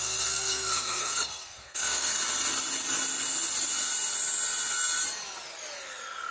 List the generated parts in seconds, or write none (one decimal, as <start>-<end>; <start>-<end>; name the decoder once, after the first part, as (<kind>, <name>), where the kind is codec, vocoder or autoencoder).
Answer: 0.0-2.1 (codec, SNAC)